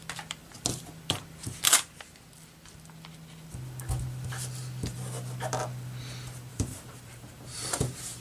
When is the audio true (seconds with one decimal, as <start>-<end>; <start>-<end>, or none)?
0.0-6.5